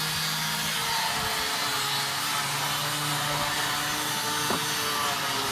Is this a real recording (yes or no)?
yes